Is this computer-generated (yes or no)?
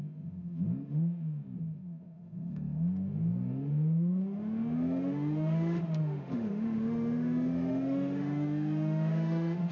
yes